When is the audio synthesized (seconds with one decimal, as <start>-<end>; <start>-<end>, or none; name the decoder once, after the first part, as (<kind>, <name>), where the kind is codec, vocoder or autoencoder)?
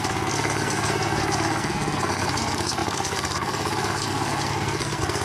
0.0-5.2 (codec, SNAC)